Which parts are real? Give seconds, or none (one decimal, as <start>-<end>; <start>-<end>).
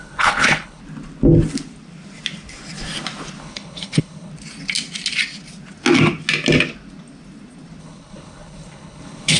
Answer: 0.8-3.4; 4.3-7.8